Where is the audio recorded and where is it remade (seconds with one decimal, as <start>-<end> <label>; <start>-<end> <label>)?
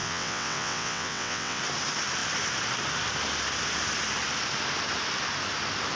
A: 0.0-1.6 remade; 1.6-6.0 recorded